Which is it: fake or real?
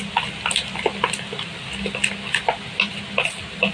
real